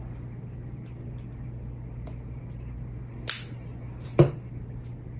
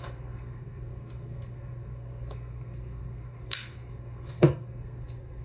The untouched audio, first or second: first